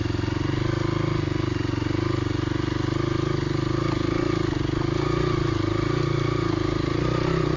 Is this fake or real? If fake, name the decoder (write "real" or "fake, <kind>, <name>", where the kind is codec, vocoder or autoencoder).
real